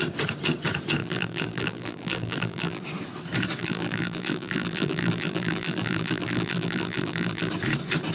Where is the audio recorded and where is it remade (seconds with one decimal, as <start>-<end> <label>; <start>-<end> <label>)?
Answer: 0.0-1.0 recorded; 1.0-2.8 remade; 2.8-3.6 recorded; 3.6-7.5 remade; 7.5-8.1 recorded